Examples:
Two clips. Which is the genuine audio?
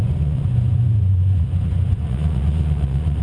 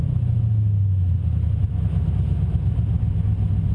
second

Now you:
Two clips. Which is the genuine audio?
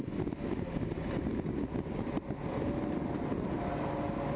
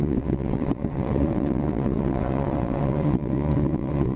first